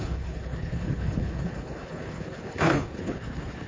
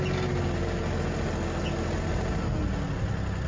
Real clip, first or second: second